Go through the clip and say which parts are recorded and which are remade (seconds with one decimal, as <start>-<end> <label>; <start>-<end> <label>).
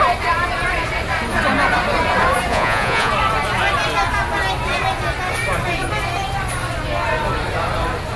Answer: 0.0-2.5 recorded; 2.5-3.1 remade; 3.1-8.2 recorded